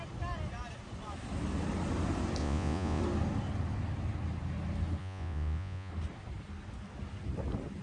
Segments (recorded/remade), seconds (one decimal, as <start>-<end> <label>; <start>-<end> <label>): 0.0-2.4 recorded; 2.4-3.0 remade; 3.0-5.0 recorded; 5.0-5.9 remade; 5.9-7.8 recorded